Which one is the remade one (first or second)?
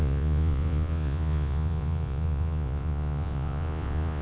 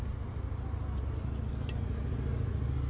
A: first